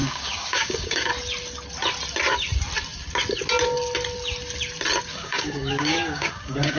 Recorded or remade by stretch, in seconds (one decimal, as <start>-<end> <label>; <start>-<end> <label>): 0.0-1.1 remade; 1.1-5.1 recorded; 5.1-6.8 remade